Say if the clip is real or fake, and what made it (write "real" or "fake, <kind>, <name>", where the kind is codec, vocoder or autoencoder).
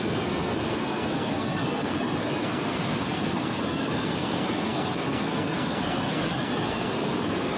fake, codec, SNAC